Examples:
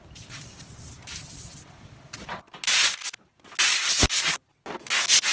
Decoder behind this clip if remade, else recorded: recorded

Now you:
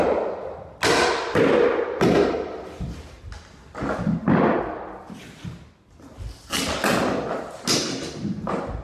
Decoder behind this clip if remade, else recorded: recorded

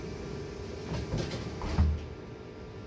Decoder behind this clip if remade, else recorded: recorded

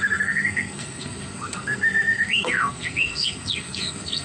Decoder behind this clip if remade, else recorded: remade, codec, SNAC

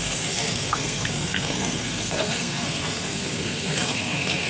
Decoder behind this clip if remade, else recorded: remade, codec, SNAC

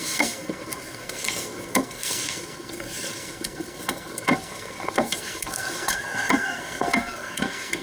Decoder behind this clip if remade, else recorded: remade, codec, SNAC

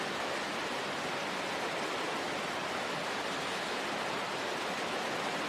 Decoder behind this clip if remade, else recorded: recorded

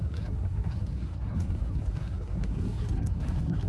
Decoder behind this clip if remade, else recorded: remade, codec, SNAC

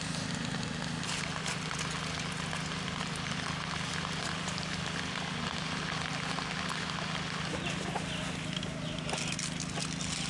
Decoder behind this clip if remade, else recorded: recorded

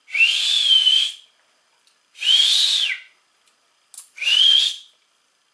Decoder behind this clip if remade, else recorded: recorded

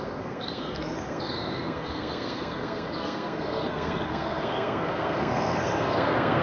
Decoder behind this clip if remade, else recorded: remade, codec, SNAC